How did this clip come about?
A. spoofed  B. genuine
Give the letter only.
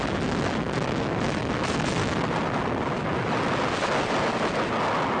B